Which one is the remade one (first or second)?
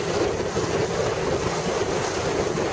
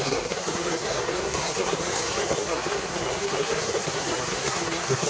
second